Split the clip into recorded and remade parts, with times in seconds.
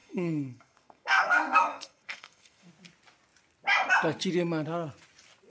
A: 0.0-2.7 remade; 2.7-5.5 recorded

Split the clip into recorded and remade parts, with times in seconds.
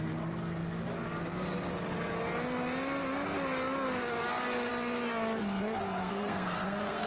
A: 0.0-6.0 recorded; 6.0-7.1 remade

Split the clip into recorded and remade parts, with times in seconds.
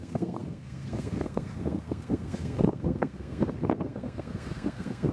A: 0.0-5.1 remade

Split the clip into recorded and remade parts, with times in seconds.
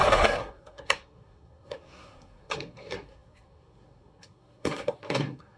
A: 0.0-5.6 remade